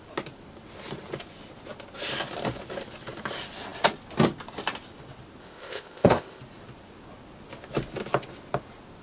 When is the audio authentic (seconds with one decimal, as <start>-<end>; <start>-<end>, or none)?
0.0-5.4; 6.4-9.0